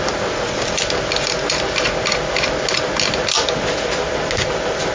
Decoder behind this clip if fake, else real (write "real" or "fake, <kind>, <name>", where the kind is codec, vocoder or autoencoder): real